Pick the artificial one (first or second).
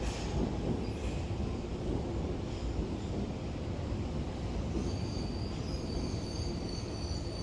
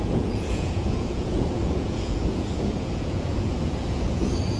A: second